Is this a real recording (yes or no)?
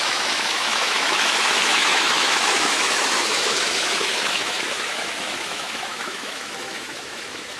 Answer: no